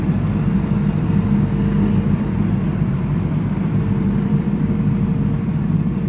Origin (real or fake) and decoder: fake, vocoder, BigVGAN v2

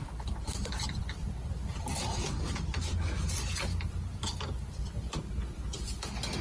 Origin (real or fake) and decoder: real